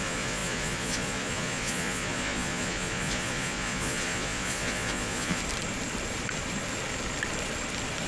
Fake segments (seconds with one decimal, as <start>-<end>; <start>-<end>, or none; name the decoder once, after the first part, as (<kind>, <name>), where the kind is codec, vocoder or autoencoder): 0.0-5.4 (vocoder, Vocos)